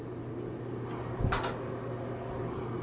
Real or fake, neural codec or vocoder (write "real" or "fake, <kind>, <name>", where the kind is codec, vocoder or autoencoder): real